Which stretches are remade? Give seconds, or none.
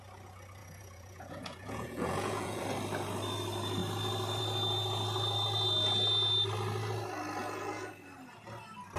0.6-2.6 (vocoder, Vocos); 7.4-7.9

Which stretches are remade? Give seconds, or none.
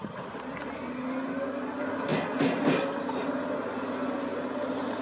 none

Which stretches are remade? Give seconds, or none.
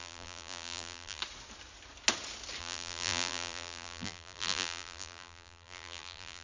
0.0-1.2 (vocoder, BigVGAN v2); 2.6-6.4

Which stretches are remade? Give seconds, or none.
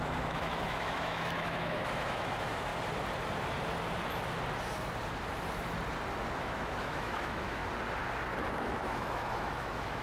0.0-2.7 (autoencoder, DAC-VAE); 6.4-7.6; 8.5-10.0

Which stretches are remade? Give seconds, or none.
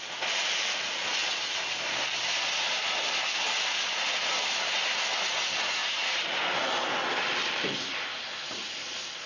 none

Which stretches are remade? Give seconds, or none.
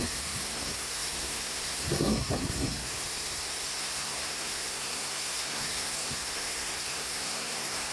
0.0-7.9 (codec, SNAC)